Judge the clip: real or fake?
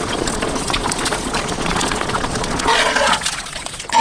fake